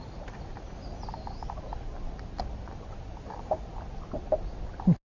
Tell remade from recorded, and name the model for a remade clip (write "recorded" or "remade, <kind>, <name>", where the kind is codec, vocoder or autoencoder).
recorded